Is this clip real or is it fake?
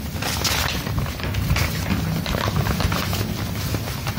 real